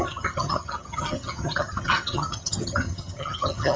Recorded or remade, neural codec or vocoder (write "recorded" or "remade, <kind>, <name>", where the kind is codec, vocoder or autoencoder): remade, vocoder, HiFi-GAN